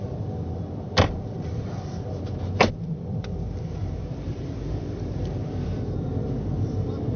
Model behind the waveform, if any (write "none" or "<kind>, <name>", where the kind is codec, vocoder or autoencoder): vocoder, BigVGAN v2